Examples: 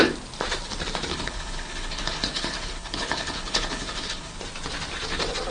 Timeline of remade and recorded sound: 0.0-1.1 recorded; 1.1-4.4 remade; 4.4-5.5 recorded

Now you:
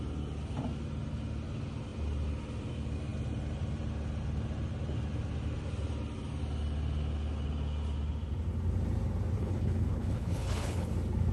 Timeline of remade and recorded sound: 0.0-9.4 recorded; 9.4-10.9 remade; 10.9-11.3 recorded